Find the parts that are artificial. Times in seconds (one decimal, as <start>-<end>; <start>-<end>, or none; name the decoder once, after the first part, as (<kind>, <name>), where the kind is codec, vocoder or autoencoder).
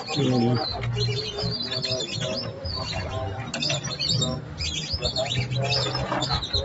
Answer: 2.6-5.4 (vocoder, BigVGAN v2)